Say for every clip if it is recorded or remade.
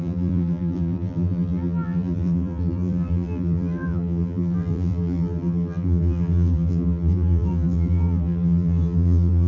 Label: remade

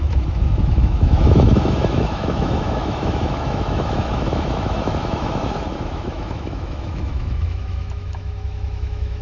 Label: remade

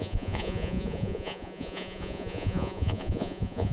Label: remade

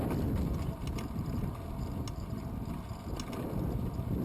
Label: recorded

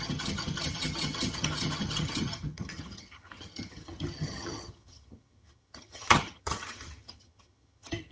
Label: remade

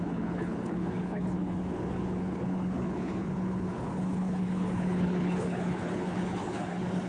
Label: remade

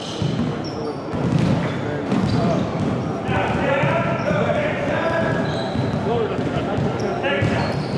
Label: recorded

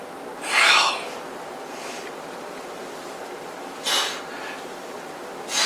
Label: recorded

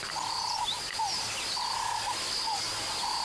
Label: recorded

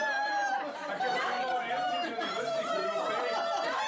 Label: remade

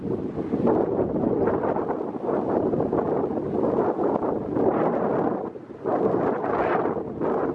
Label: recorded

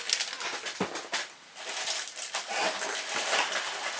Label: recorded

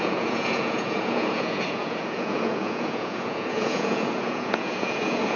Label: remade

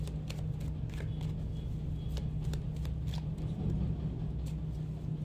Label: recorded